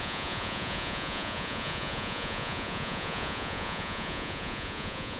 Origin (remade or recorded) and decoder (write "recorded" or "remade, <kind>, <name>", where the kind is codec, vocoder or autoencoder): remade, vocoder, Vocos